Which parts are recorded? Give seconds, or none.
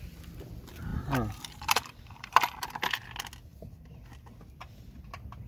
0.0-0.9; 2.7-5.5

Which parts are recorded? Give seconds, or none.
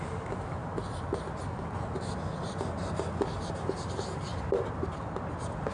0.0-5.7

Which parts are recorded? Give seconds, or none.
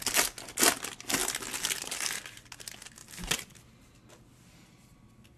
0.0-3.0; 3.6-5.4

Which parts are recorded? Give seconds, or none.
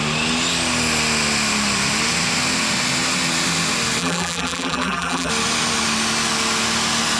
0.0-4.0; 5.3-7.2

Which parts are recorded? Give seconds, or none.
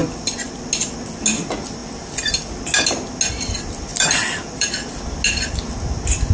0.6-1.8; 2.5-3.9; 4.7-6.3